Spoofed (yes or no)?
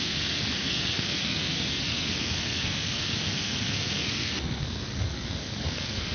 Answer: yes